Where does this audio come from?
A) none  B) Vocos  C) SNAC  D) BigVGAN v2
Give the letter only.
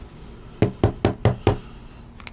A